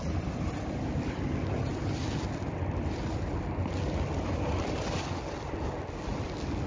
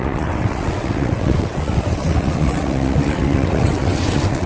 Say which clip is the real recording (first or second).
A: first